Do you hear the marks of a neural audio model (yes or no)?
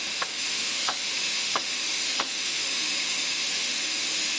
yes